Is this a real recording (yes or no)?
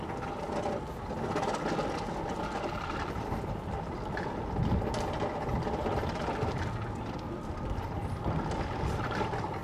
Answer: yes